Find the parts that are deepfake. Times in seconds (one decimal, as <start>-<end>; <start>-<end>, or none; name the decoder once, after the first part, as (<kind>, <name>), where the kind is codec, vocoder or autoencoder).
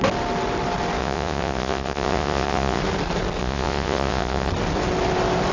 1.0-2.8 (vocoder, Vocos); 3.4-4.5